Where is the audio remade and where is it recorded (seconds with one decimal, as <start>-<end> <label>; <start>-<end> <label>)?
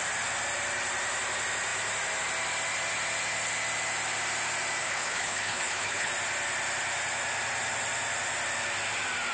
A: 0.0-4.8 recorded; 4.8-6.1 remade; 6.1-9.3 recorded